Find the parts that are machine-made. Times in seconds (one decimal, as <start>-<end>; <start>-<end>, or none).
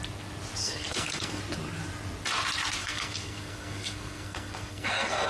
0.6-1.4; 2.8-5.3